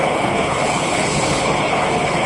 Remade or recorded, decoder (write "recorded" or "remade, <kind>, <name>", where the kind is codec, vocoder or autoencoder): remade, codec, HILCodec